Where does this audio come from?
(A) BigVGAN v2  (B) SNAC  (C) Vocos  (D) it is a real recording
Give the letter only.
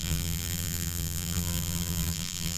A